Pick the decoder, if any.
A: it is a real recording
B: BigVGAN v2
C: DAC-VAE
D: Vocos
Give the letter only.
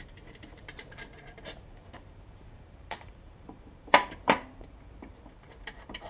B